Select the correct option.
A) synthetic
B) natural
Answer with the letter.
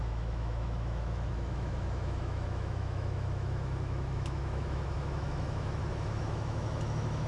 A